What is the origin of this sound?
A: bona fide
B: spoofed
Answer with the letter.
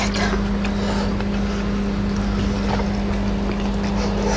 A